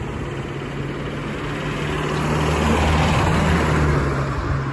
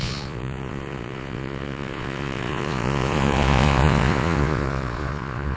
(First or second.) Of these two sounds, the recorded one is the first